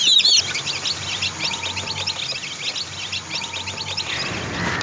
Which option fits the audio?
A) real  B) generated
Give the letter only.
A